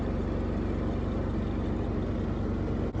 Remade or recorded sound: recorded